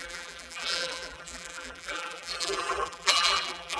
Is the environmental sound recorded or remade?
remade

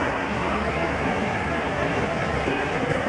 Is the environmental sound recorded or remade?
remade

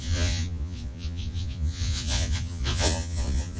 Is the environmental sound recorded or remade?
remade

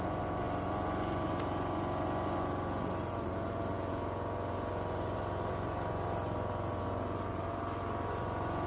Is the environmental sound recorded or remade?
remade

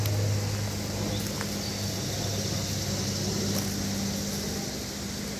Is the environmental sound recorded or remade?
recorded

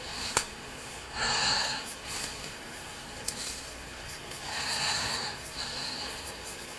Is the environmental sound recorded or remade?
remade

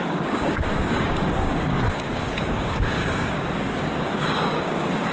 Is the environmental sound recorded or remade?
remade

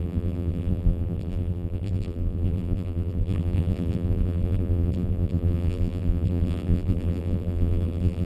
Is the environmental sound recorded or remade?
remade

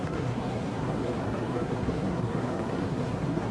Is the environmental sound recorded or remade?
remade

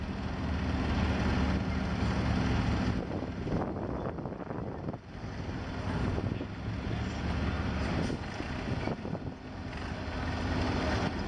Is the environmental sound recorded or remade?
recorded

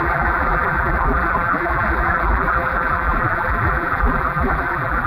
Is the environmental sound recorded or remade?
remade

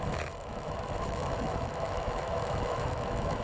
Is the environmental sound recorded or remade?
remade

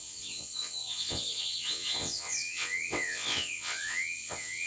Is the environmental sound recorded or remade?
remade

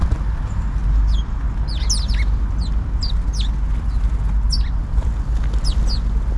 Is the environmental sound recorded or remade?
recorded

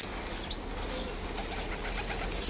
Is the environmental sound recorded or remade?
recorded